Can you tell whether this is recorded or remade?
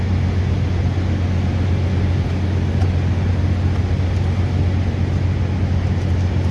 recorded